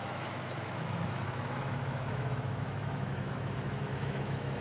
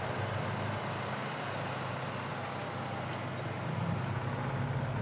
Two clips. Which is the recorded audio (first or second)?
second